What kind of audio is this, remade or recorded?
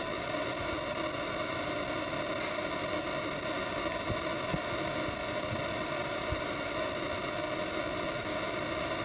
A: recorded